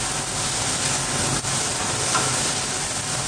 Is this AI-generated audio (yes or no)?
no